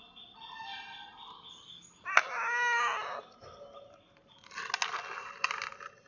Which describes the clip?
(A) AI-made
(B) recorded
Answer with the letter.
B